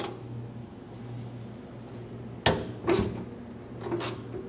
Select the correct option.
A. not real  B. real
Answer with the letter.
B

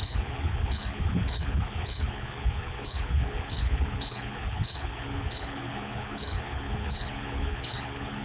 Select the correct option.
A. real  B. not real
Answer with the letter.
B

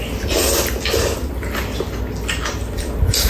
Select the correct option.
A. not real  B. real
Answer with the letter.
B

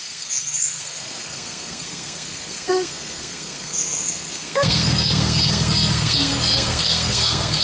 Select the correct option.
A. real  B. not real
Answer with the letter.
B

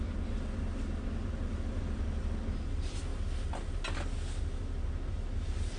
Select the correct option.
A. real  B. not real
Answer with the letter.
A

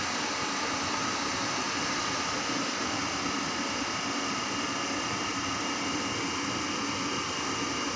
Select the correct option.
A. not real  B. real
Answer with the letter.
B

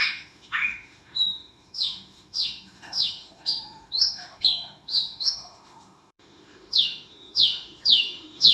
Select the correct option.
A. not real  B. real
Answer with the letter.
A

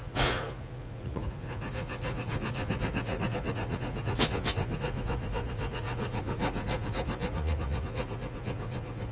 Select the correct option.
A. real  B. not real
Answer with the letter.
B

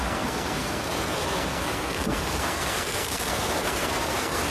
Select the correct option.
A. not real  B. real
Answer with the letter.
A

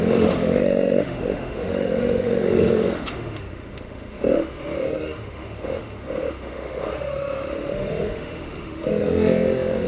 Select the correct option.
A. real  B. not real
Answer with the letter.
B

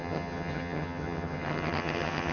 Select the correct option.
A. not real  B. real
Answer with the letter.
A